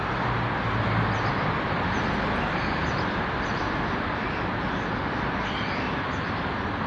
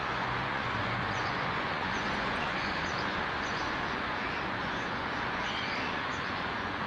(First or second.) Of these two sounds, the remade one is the second